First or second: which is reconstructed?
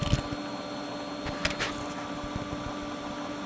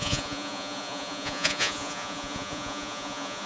second